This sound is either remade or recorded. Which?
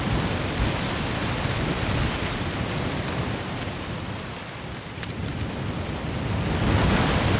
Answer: recorded